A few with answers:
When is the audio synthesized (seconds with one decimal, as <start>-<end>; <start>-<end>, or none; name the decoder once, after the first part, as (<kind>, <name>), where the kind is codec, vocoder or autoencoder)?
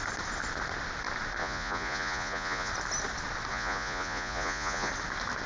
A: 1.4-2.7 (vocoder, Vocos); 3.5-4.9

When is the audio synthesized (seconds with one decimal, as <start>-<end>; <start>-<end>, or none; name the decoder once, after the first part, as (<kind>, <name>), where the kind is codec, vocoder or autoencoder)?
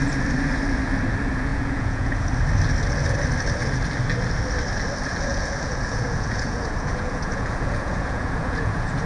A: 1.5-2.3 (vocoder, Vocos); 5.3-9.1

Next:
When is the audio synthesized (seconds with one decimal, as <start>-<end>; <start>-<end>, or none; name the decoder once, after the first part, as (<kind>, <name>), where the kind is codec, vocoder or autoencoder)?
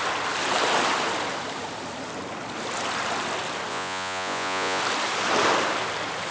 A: 3.7-4.8 (vocoder, Vocos)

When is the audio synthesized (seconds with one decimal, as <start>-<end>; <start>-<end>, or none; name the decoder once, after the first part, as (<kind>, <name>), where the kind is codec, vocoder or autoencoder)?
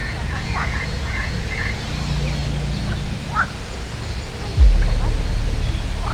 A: 0.0-1.8 (vocoder, Vocos)